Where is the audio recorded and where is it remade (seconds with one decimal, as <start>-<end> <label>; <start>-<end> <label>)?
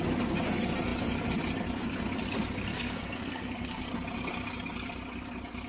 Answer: 0.0-2.7 recorded; 2.7-3.8 remade; 3.8-5.7 recorded